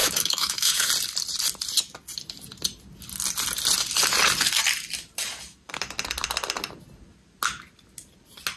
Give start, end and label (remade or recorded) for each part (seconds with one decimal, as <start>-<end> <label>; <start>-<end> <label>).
0.0-0.9 remade; 0.9-8.6 recorded